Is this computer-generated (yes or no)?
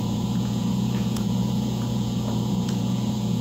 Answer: yes